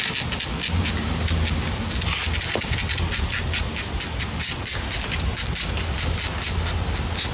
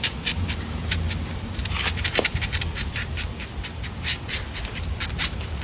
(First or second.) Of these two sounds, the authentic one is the first